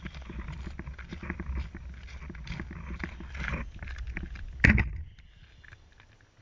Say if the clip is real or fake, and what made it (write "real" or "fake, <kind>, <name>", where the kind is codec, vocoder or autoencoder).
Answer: real